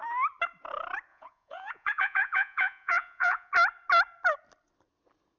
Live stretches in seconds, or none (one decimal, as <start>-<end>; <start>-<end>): 0.0-1.1; 3.5-5.4